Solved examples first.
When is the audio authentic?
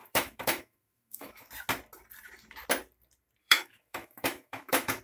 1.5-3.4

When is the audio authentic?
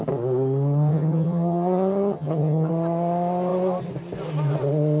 0.0-0.9; 2.7-5.0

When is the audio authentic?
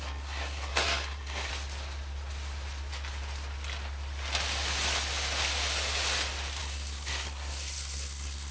1.5-6.6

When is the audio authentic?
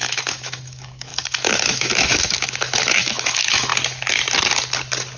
3.7-5.2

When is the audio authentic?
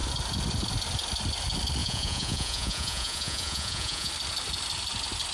0.0-1.8; 4.1-5.3